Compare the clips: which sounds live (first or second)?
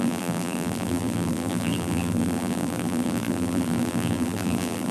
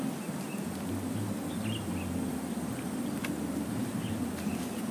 second